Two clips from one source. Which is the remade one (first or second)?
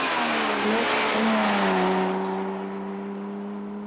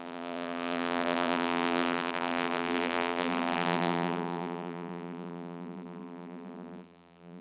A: second